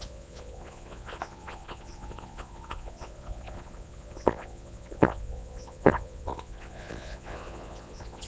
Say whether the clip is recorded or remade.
remade